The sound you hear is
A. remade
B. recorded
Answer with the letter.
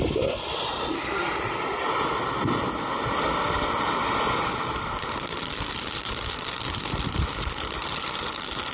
B